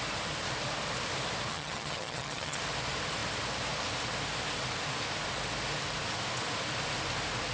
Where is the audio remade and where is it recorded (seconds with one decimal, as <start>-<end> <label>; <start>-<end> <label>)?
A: 0.0-1.5 recorded; 1.5-2.6 remade; 2.6-7.5 recorded